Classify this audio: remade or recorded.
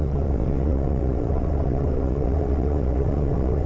remade